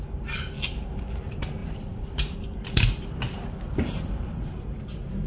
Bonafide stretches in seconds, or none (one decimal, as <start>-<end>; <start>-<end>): 0.0-1.6; 4.8-5.3